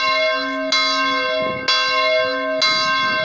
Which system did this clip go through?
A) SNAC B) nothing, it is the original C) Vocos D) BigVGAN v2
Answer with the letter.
B